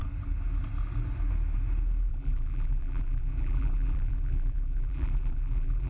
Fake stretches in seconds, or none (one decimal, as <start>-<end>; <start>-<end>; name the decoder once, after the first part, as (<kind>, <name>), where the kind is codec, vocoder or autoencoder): 2.1-5.9 (vocoder, BigVGAN v2)